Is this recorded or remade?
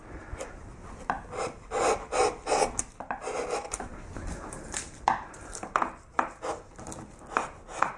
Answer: recorded